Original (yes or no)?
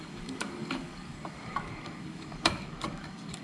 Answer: no